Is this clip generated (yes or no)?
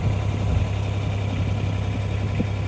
no